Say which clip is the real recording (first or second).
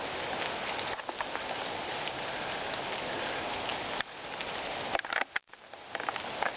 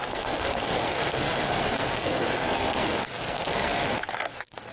first